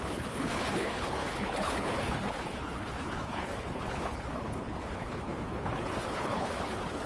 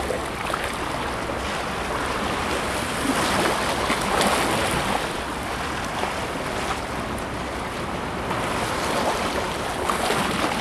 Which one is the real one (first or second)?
second